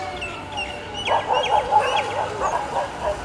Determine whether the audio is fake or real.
real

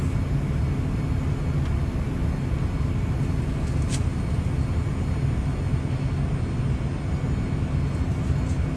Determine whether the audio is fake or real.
real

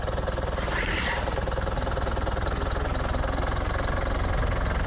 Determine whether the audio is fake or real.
real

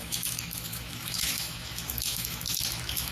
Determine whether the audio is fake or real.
fake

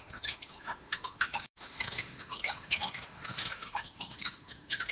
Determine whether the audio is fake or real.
fake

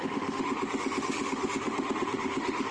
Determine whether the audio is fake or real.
fake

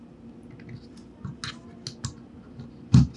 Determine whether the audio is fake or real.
real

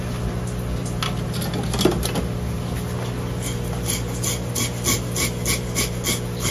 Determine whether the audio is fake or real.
real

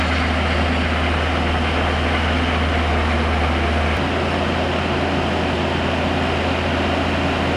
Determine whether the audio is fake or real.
real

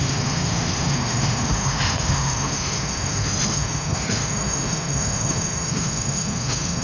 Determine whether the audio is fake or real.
fake